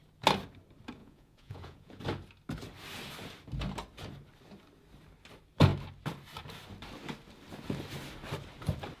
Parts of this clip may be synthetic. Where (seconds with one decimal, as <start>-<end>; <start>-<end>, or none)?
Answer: 1.0-2.0